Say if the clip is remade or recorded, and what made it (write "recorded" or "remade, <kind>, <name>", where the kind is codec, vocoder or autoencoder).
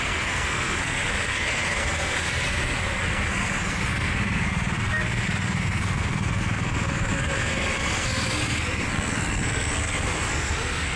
remade, codec, SNAC